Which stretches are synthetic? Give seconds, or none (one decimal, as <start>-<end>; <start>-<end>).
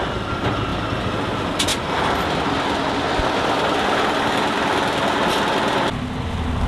none